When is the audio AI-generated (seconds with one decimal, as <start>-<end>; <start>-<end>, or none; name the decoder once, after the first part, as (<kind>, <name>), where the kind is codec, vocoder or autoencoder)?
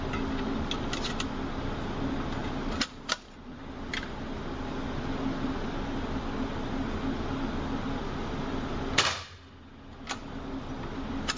2.4-3.6 (vocoder, BigVGAN v2)